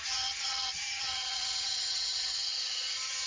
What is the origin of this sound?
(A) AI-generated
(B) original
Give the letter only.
A